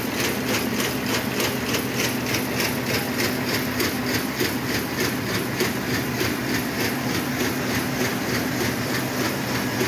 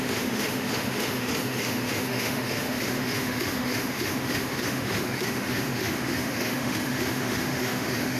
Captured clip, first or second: first